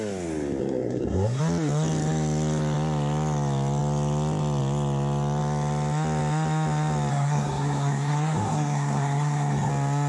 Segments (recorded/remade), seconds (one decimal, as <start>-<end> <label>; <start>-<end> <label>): 0.0-0.6 recorded; 0.6-1.4 remade; 1.4-7.1 recorded; 7.1-9.7 remade; 9.7-10.1 recorded